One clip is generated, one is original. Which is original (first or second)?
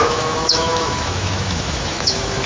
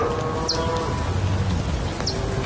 second